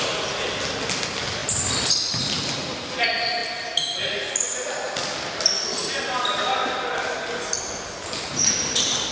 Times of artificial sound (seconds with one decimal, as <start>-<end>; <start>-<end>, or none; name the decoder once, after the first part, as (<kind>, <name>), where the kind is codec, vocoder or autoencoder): none